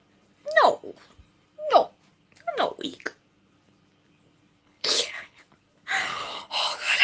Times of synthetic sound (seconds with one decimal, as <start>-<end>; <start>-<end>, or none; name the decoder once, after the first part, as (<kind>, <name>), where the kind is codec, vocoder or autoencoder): 4.6-5.4 (codec, HILCodec); 6.1-7.0